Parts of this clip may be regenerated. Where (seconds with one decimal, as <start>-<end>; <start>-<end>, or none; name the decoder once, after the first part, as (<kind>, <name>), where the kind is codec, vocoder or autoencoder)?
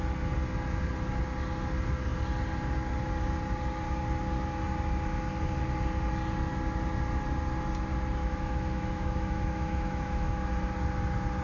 8.2-10.5 (autoencoder, DAC-VAE)